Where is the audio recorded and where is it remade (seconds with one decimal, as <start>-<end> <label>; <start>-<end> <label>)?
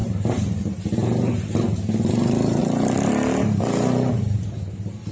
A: 0.0-1.3 remade; 1.3-2.1 recorded; 2.1-2.6 remade; 2.6-4.1 recorded; 4.1-5.1 remade